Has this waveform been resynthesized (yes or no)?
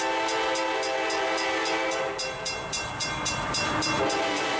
no